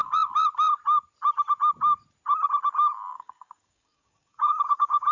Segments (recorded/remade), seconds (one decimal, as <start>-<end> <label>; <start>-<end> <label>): 0.0-3.1 recorded; 3.1-5.1 remade